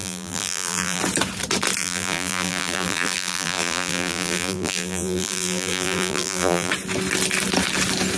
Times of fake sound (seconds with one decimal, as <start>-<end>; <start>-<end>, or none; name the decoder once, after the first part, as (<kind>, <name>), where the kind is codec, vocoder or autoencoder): 0.0-1.0 (vocoder, BigVGAN v2); 1.8-6.7